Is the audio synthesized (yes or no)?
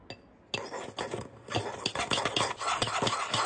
no